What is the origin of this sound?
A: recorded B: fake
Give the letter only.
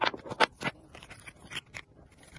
A